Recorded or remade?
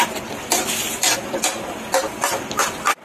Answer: recorded